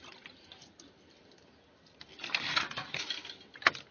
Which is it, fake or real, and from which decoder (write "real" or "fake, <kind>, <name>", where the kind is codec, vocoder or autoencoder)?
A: real